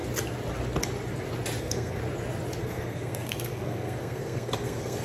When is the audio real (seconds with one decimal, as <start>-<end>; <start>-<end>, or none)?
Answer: 0.0-1.6; 2.0-2.6